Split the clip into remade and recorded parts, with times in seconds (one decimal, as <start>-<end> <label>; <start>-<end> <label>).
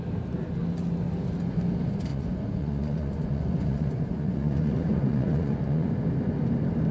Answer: 0.0-2.1 recorded; 2.1-5.9 remade; 5.9-6.9 recorded